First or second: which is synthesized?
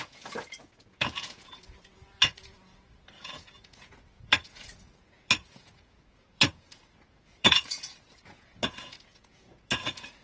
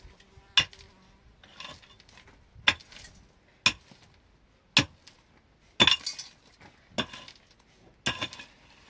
first